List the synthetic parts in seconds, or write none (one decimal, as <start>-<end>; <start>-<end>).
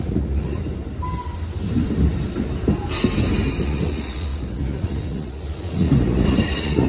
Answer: 0.0-0.6; 3.6-6.9